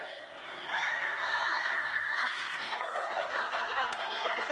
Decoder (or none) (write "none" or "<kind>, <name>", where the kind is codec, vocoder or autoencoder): codec, SNAC